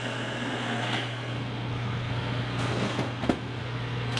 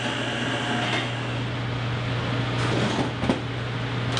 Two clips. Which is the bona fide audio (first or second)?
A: second